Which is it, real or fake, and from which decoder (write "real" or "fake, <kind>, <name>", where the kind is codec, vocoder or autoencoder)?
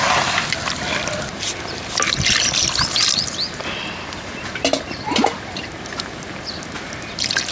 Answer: real